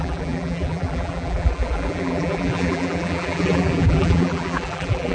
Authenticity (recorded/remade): remade